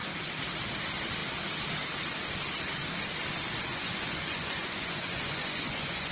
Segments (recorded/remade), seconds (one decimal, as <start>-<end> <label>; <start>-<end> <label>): 0.0-3.7 recorded; 3.7-6.1 remade